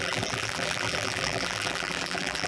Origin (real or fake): fake